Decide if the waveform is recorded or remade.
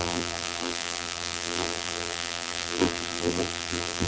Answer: remade